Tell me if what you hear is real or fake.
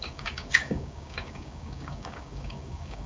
fake